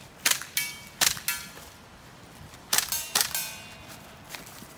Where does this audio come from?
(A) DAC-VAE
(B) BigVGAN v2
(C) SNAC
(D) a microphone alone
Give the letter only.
D